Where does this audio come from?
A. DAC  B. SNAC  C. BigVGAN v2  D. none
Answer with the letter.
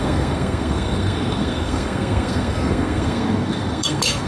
B